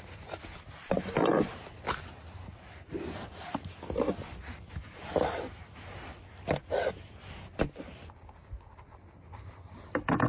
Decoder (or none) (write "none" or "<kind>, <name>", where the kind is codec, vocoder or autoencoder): none